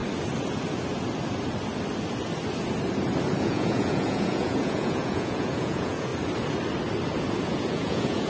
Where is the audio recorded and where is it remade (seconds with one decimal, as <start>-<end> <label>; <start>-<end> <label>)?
0.0-3.4 recorded; 3.4-6.1 remade; 6.1-7.4 recorded; 7.4-8.3 remade